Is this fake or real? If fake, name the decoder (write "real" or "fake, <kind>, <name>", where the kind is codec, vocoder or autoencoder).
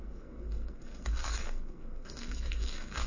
fake, codec, SNAC